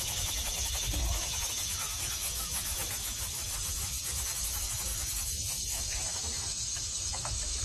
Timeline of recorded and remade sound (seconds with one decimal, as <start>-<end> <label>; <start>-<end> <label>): 0.0-7.6 remade